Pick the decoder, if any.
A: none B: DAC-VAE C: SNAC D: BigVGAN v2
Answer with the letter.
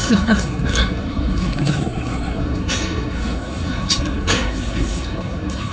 C